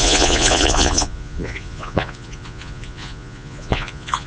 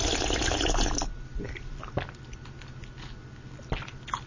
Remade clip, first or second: first